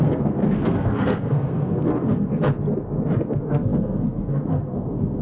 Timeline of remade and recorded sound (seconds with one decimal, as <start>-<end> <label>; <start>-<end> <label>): 0.0-2.3 remade; 2.3-3.2 recorded; 3.2-5.2 remade